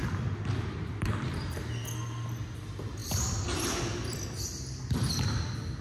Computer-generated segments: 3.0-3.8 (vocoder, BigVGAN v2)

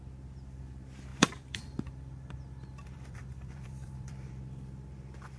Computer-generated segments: 1.1-4.3 (vocoder, BigVGAN v2)